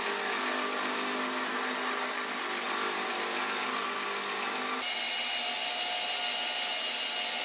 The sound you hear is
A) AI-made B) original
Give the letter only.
B